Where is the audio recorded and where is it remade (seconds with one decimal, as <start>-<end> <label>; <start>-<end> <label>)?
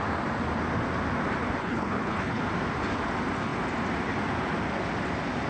0.0-1.6 recorded; 1.6-2.4 remade; 2.4-5.5 recorded